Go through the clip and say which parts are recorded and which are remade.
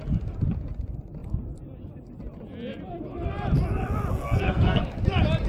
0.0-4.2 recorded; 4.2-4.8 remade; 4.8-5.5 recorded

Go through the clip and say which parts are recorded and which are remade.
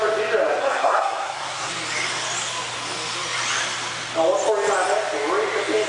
0.0-0.6 recorded; 0.6-1.7 remade; 1.7-5.9 recorded